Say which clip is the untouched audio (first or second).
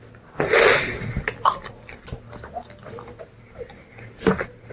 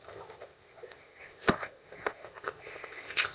first